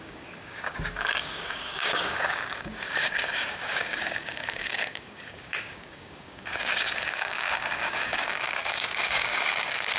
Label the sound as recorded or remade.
remade